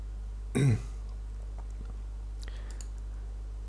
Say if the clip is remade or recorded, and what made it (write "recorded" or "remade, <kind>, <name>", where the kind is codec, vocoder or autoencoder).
recorded